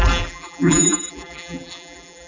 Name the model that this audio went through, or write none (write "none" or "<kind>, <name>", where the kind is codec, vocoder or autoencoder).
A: vocoder, BigVGAN v2